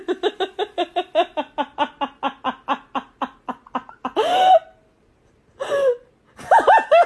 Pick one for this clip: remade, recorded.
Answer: recorded